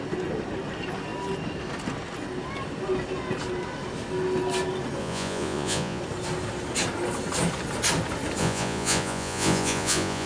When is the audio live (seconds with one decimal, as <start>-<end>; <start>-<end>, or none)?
0.0-5.0; 6.0-8.4